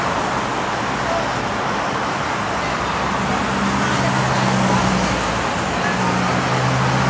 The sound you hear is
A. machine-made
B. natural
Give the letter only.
B